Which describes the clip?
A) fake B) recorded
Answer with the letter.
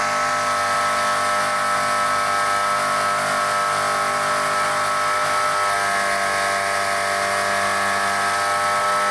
B